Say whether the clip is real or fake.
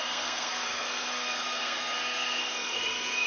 fake